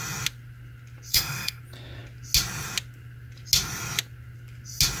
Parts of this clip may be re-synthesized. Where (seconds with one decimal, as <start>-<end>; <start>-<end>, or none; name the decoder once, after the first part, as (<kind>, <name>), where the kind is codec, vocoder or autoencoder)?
1.1-1.6 (codec, SNAC)